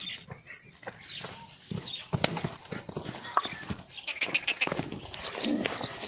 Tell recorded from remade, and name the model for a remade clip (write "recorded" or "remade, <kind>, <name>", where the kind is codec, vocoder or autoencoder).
recorded